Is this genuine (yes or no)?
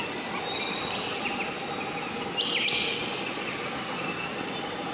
yes